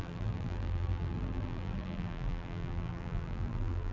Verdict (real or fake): fake